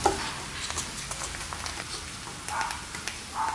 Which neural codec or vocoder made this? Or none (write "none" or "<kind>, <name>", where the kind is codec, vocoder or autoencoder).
none